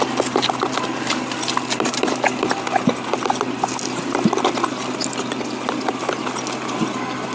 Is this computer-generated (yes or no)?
no